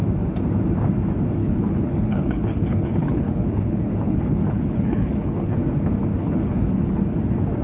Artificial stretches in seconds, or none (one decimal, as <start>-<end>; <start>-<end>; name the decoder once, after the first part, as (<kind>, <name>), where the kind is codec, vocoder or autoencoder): 1.4-5.6 (codec, HILCodec); 6.2-7.0